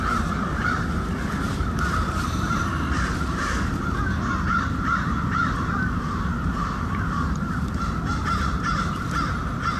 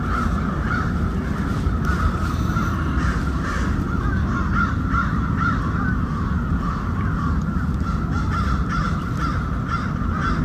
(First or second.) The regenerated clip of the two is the first